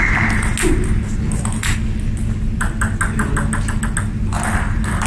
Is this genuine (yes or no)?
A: yes